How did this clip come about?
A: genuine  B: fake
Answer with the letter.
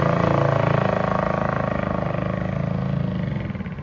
A